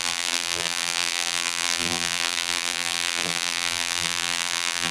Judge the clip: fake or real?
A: fake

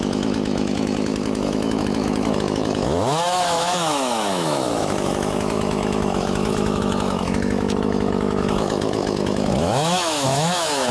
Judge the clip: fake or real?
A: fake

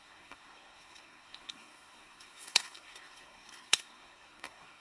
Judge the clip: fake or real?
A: fake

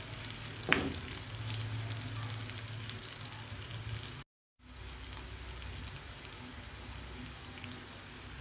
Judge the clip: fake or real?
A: real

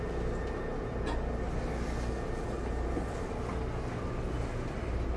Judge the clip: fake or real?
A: real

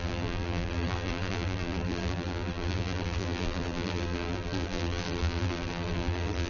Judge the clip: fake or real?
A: fake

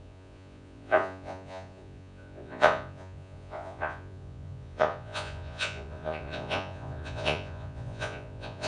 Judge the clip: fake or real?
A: fake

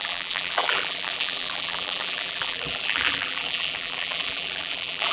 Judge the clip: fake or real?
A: fake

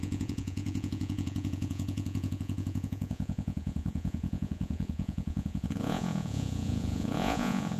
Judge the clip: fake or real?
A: fake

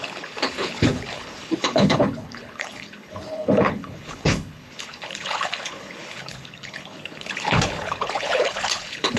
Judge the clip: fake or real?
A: fake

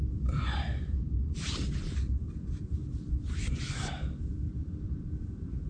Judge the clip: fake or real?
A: fake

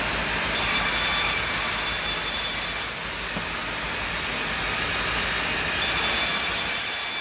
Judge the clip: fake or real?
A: real